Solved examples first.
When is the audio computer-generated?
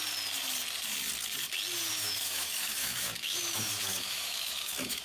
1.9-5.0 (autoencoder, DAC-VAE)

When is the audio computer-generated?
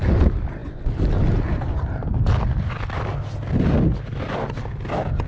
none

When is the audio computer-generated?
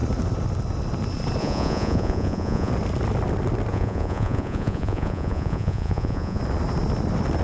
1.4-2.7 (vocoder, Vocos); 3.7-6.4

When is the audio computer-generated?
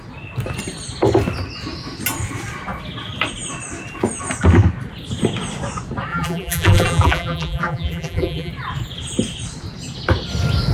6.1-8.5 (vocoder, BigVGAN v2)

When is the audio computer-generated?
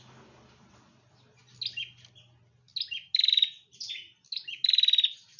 none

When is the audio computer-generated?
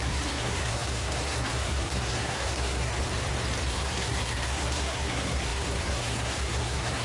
0.0-2.9 (codec, SNAC); 3.7-7.0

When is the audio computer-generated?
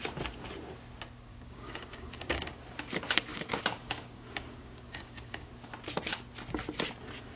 1.3-2.5 (codec, DAC); 3.3-5.5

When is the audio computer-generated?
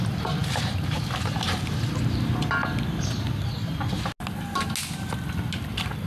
none